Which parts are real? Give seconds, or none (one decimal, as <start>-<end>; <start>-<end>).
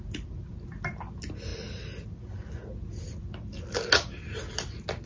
0.0-5.1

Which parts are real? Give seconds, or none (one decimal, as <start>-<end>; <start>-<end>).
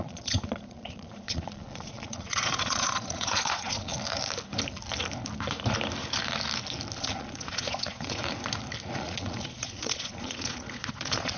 3.9-7.0; 8.2-8.9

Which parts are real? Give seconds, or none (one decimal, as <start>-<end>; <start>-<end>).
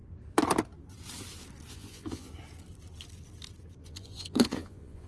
0.0-1.7; 2.3-3.8